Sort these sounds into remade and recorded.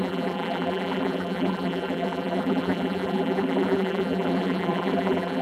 remade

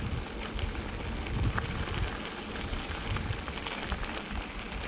recorded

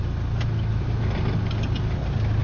recorded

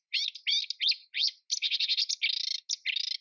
recorded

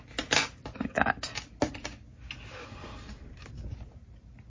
recorded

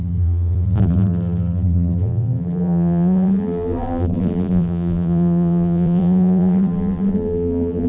remade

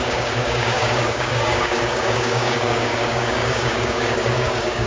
remade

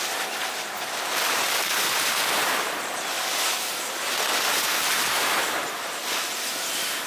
remade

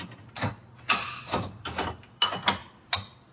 recorded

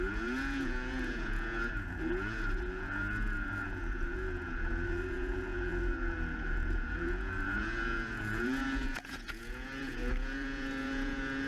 remade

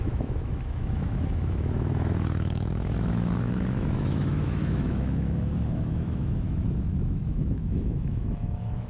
remade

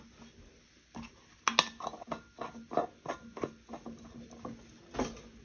recorded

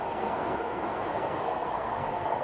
remade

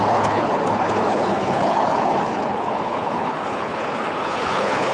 remade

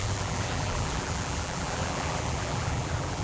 remade